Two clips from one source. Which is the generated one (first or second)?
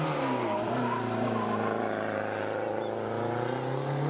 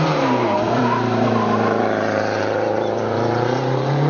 second